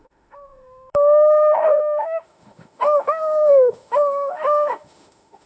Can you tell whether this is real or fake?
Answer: fake